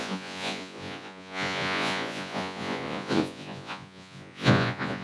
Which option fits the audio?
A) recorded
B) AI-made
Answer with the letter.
B